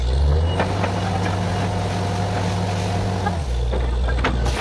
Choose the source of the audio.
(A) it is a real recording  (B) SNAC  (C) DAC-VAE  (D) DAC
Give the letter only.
A